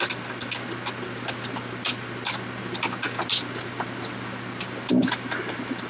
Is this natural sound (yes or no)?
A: yes